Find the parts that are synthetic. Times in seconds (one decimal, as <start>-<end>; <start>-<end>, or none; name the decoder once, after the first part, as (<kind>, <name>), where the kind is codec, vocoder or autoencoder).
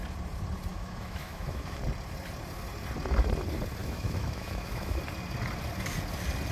0.7-1.8 (autoencoder, DAC-VAE); 3.8-5.0